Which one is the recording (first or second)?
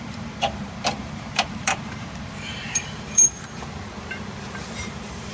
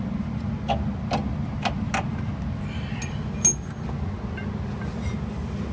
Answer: second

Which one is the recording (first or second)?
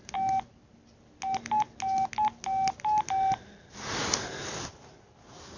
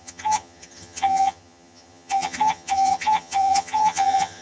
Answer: first